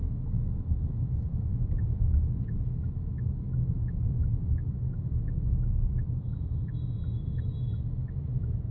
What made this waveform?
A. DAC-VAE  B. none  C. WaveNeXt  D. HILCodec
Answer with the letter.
A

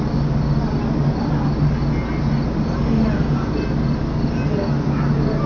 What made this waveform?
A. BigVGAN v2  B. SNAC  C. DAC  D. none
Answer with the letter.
D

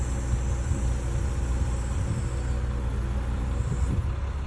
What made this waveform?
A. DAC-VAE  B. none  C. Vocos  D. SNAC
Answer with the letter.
B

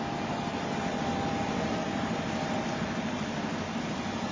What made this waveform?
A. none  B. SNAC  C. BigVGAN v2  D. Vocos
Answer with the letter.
C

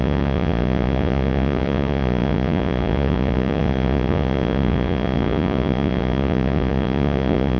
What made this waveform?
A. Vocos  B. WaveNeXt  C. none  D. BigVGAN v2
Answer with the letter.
A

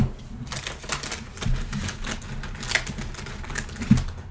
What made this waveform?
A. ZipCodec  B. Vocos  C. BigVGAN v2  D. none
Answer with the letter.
D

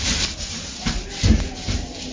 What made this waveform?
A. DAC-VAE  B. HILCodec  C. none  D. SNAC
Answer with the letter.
C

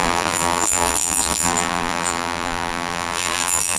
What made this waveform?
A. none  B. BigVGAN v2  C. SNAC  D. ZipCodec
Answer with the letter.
B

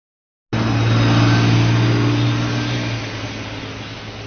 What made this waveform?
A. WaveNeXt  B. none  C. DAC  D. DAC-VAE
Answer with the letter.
B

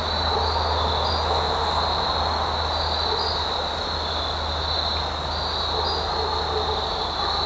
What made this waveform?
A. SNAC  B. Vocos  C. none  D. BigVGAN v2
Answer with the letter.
C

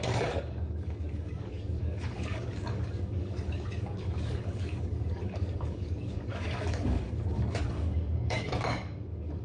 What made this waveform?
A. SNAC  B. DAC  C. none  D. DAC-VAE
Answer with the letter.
B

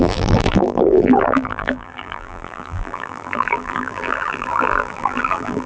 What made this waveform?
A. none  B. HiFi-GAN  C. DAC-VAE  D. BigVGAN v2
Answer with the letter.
D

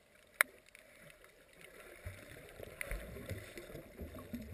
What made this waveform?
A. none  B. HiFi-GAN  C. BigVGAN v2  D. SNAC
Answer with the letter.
A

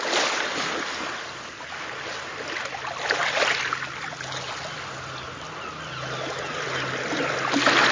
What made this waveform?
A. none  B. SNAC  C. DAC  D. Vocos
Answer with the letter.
A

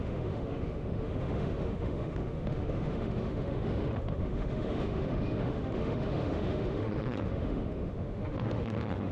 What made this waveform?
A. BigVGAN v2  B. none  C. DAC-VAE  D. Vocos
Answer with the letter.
C